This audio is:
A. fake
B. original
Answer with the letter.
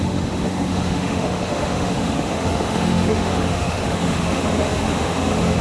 A